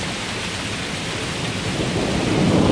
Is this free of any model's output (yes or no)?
yes